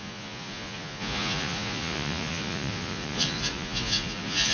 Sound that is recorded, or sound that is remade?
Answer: remade